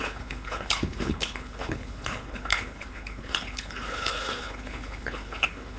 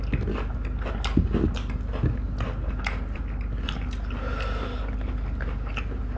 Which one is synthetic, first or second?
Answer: first